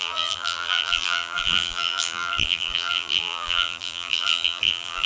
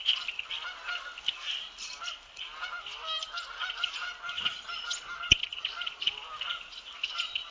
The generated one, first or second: first